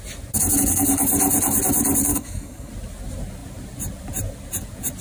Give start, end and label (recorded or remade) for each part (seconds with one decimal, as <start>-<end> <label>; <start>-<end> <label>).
0.0-2.1 recorded; 2.1-2.7 remade; 2.7-5.0 recorded